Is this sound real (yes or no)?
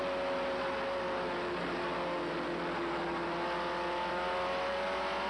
yes